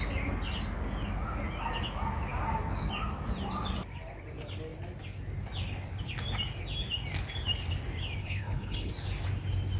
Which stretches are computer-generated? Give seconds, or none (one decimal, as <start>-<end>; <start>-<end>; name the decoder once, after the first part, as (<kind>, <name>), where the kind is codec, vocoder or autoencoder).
8.2-8.9 (codec, HILCodec)